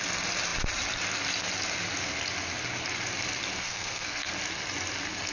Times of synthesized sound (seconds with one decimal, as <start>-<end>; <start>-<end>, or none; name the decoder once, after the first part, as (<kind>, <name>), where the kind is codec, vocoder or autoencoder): 3.6-4.3 (codec, SNAC)